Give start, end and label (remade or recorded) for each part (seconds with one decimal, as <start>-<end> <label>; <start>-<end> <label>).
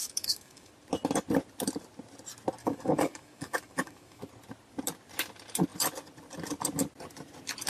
0.0-0.7 remade; 0.7-2.6 recorded; 2.6-4.2 remade; 4.2-7.7 recorded